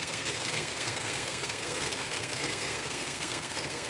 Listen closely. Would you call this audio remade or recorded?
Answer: remade